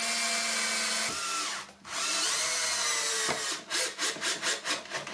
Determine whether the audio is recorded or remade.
recorded